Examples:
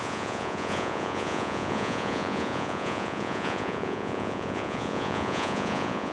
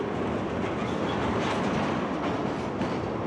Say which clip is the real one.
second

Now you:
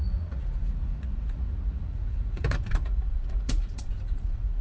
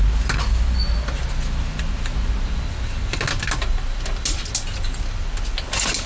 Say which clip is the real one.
second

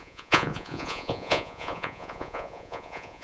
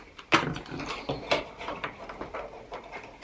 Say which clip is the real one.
second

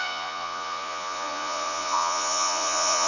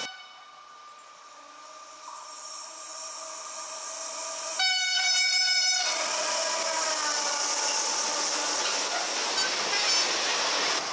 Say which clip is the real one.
second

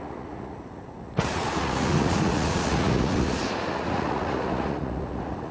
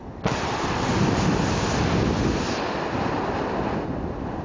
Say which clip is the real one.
second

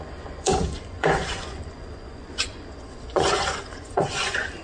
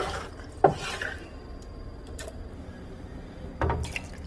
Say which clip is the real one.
second